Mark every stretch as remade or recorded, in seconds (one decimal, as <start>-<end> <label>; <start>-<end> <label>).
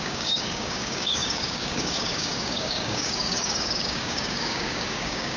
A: 0.0-5.4 remade